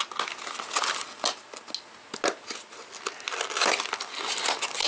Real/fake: real